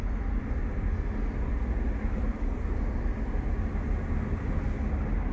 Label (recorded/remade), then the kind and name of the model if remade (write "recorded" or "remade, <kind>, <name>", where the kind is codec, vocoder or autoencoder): recorded